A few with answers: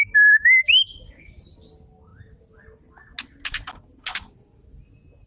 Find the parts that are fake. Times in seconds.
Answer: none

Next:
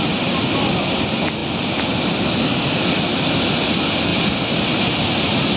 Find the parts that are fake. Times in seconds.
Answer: 4.1-4.9 (vocoder, BigVGAN v2)